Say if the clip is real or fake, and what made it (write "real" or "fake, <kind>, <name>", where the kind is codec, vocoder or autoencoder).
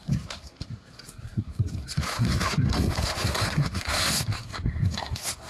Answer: fake, codec, SNAC